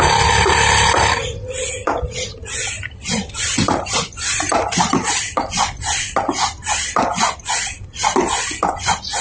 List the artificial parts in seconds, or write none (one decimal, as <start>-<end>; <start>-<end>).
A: none